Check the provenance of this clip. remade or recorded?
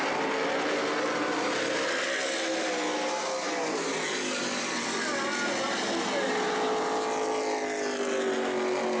recorded